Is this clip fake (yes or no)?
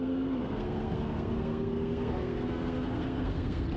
yes